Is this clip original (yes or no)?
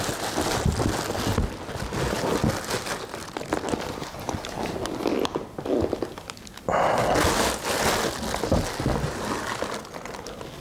yes